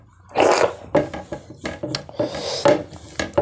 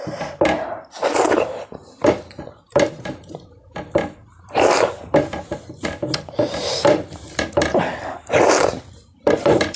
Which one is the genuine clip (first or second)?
first